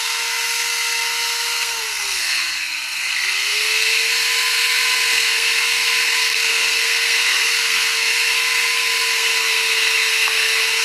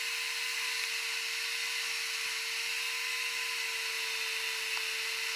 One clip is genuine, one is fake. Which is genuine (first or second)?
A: second